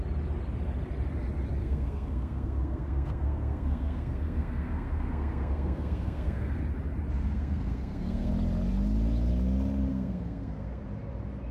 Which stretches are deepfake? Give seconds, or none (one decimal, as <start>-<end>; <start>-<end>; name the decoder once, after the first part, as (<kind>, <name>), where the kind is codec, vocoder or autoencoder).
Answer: 1.6-6.6 (codec, SNAC); 7.2-8.3; 9.9-10.8